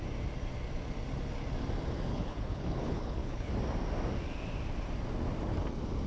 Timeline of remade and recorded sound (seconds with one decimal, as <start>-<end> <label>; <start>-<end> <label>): 0.0-2.1 recorded; 2.1-3.5 remade; 3.5-6.1 recorded